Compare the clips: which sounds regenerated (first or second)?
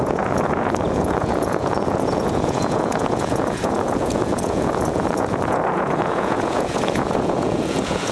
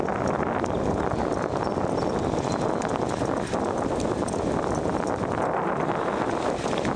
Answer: first